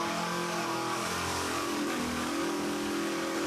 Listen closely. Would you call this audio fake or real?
fake